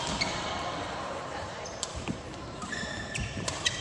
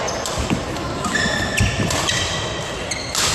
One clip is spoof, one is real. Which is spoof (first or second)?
first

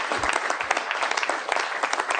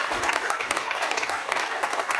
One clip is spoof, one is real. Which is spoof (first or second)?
second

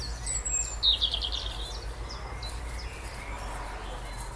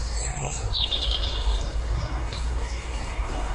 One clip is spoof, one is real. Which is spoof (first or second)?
second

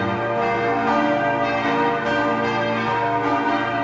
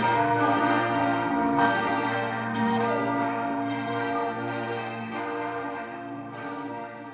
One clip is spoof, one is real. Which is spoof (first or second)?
second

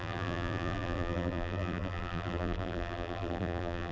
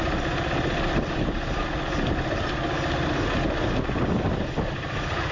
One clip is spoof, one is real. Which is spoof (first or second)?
first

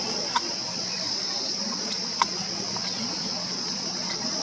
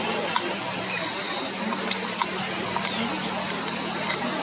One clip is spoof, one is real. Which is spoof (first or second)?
first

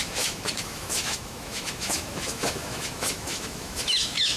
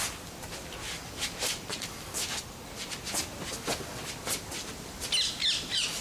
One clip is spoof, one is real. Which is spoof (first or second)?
first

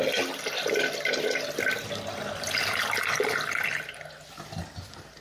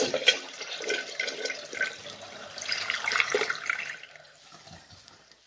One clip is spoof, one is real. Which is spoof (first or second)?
second